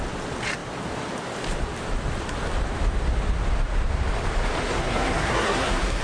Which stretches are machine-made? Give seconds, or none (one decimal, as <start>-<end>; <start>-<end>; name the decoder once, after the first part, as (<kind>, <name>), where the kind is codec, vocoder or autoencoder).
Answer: 4.6-6.0 (codec, SNAC)